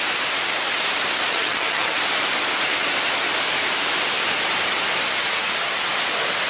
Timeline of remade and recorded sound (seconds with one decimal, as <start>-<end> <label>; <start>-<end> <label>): 0.0-1.3 recorded; 1.3-2.0 remade; 2.0-6.5 recorded